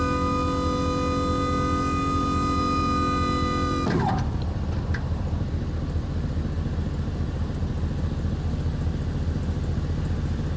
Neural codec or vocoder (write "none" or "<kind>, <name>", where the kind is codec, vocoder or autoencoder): none